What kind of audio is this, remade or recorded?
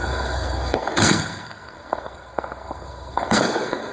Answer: remade